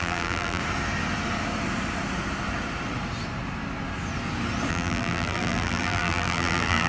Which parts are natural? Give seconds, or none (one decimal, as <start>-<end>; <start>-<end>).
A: 0.6-4.7